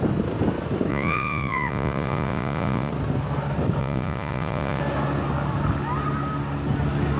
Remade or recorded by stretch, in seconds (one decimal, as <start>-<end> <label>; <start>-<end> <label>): 0.0-0.9 recorded; 0.9-2.9 remade; 2.9-3.8 recorded; 3.8-4.8 remade; 4.8-7.2 recorded